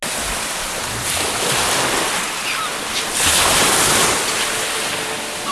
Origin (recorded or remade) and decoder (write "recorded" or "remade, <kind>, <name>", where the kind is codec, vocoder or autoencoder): recorded